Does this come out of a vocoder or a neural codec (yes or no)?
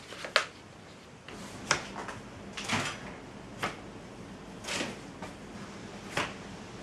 no